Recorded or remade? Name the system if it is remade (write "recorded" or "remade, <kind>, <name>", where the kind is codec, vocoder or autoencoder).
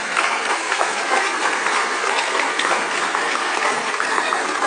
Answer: remade, codec, SNAC